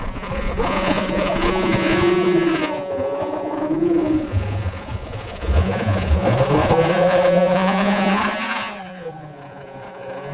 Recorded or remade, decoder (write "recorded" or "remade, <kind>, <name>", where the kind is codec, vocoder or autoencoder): remade, vocoder, Vocos